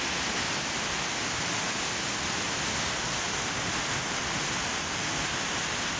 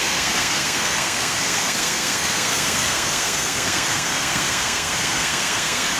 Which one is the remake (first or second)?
second